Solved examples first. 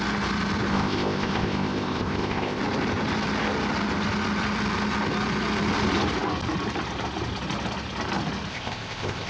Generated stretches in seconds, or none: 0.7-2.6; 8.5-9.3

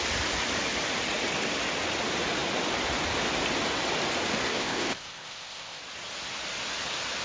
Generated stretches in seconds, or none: 4.5-5.8